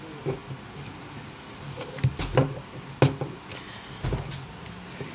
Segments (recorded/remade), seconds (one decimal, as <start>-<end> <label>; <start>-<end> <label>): 0.0-5.1 recorded